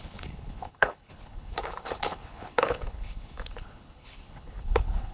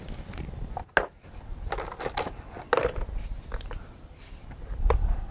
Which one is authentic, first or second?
second